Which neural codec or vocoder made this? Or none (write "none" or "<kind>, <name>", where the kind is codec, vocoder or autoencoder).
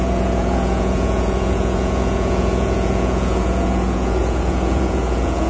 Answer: vocoder, Vocos